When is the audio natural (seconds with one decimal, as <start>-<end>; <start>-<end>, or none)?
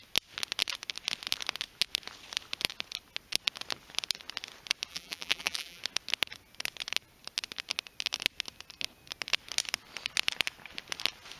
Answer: 0.0-4.9; 5.8-11.4